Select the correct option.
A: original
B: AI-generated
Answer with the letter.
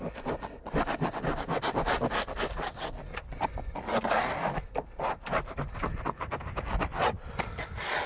A